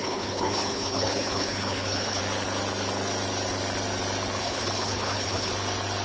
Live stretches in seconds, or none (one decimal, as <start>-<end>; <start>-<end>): 2.2-4.4; 5.5-6.0